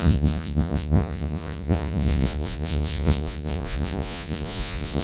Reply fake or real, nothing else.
fake